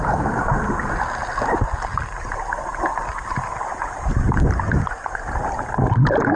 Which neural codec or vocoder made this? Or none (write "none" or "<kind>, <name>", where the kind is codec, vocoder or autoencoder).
none